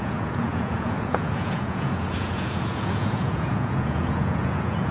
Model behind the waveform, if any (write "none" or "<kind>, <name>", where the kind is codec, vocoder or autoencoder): vocoder, Vocos